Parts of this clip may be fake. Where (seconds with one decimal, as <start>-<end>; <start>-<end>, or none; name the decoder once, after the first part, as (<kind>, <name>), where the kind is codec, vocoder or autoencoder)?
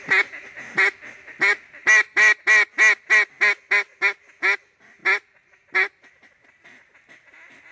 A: none